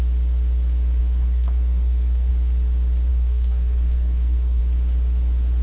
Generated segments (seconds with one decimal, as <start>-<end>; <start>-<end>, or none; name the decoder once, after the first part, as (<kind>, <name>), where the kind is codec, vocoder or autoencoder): 1.0-2.3 (codec, SNAC); 3.1-4.6